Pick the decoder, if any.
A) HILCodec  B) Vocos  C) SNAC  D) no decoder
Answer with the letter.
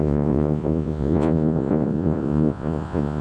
B